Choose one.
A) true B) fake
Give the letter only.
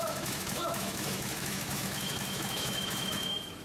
B